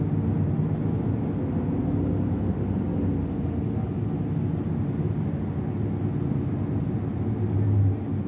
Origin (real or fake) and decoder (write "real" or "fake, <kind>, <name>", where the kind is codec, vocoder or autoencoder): real